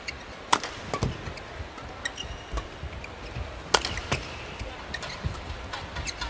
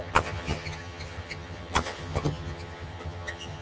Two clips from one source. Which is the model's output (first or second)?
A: second